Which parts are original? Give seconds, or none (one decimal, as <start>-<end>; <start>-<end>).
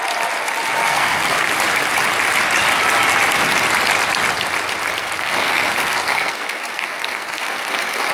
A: 0.0-0.8; 1.5-5.0